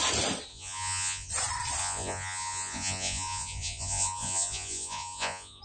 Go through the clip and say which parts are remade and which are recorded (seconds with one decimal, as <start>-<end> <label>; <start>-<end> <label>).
0.0-0.5 recorded; 0.5-1.3 remade; 1.3-1.8 recorded; 1.8-5.6 remade